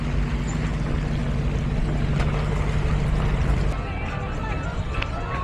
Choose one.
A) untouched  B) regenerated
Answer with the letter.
A